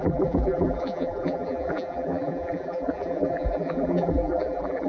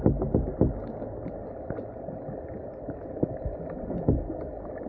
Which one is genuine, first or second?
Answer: second